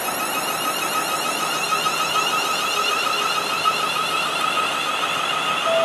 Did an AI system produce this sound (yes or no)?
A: no